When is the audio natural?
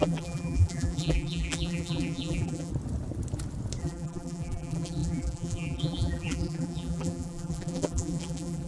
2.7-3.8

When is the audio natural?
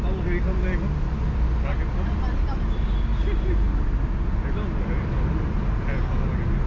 0.0-6.7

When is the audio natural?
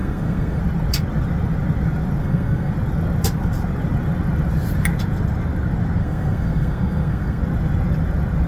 0.6-2.2; 2.7-6.0; 7.4-8.5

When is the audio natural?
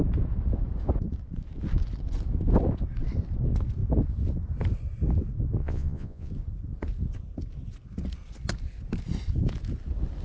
0.0-5.6; 6.3-10.2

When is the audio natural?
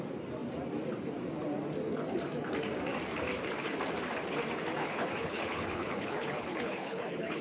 0.0-4.8